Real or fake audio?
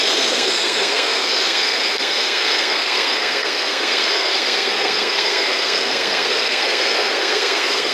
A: fake